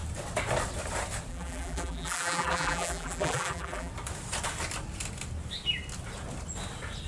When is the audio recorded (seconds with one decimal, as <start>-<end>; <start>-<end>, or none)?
0.0-1.3; 3.9-7.1